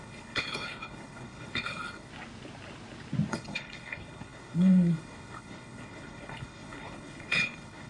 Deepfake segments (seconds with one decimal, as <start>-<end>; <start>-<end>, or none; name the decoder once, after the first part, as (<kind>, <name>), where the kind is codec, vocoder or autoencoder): 0.0-2.1 (codec, HILCodec); 3.3-7.9